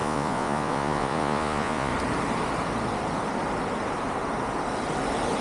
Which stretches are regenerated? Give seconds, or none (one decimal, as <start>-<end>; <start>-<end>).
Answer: 0.0-1.9